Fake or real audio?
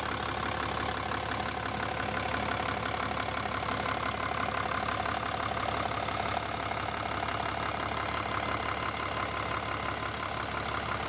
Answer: real